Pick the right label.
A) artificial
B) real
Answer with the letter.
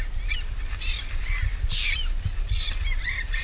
B